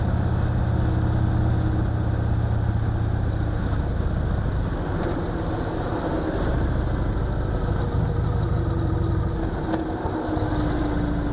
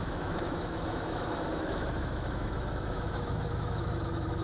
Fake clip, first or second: second